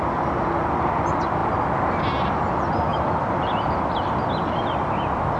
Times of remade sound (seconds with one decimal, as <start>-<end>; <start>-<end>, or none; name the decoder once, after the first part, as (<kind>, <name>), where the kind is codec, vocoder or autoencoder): 2.9-3.5 (vocoder, BigVGAN v2)